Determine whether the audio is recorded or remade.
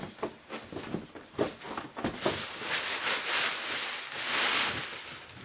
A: recorded